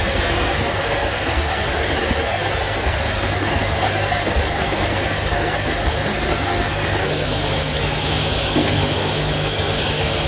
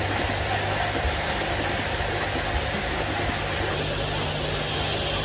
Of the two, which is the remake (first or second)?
first